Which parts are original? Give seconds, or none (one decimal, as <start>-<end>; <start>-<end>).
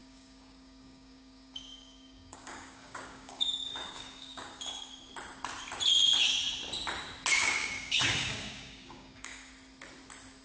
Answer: 4.9-7.3; 9.5-10.4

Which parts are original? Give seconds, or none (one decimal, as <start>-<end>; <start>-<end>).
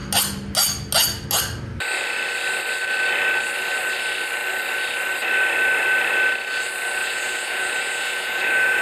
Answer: 0.0-7.0